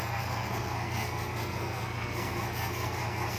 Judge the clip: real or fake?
fake